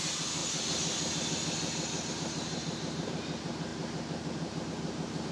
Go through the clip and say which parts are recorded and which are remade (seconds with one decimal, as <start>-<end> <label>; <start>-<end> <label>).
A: 0.0-0.4 remade; 0.4-2.1 recorded; 2.1-5.3 remade

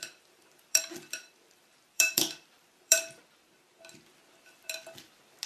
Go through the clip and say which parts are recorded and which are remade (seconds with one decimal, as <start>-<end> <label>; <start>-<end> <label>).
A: 0.0-3.2 remade; 3.2-5.5 recorded

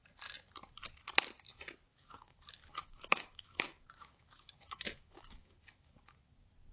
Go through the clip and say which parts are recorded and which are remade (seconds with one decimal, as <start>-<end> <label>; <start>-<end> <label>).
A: 0.0-1.9 recorded; 1.9-5.9 remade; 5.9-6.7 recorded

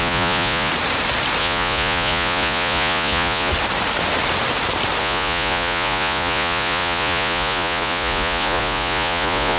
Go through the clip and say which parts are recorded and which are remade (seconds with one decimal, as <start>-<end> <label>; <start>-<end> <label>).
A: 0.0-0.7 remade; 0.7-1.4 recorded; 1.4-3.5 remade; 3.5-5.0 recorded; 5.0-9.6 remade

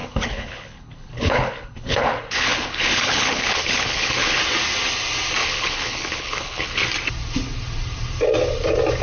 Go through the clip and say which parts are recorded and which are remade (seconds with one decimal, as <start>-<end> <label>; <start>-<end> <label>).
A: 0.0-4.4 remade; 4.4-5.4 recorded; 5.4-6.9 remade; 6.9-9.0 recorded

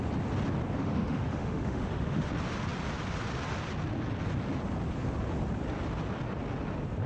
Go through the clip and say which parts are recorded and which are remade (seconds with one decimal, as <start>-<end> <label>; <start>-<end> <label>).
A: 0.0-0.8 recorded; 0.8-2.3 remade; 2.3-7.1 recorded